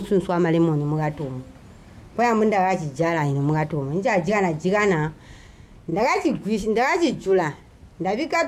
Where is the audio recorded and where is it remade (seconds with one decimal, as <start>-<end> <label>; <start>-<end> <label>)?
0.0-1.2 remade; 1.2-5.9 recorded; 5.9-7.6 remade; 7.6-8.5 recorded